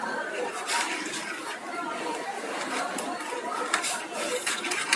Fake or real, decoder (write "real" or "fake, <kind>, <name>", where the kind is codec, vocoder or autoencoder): fake, vocoder, BigVGAN v2